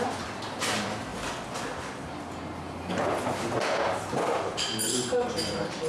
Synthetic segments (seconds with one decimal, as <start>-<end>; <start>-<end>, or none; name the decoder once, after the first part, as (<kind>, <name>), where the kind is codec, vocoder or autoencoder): 0.0-1.1 (vocoder, BigVGAN v2); 3.5-5.9